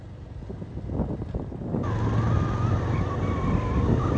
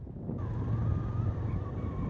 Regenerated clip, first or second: second